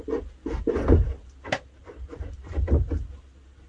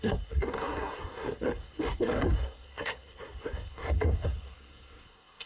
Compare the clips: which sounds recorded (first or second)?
first